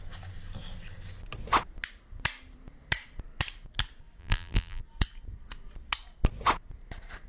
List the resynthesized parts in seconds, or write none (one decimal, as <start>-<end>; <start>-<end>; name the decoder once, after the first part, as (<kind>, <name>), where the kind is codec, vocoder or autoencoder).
4.2-4.8 (vocoder, BigVGAN v2)